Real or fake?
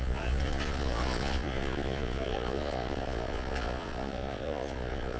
fake